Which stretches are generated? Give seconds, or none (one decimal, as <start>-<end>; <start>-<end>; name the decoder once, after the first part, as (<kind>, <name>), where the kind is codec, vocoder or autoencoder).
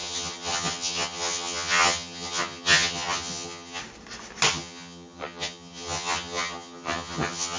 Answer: 0.0-3.8 (vocoder, HiFi-GAN); 4.5-7.6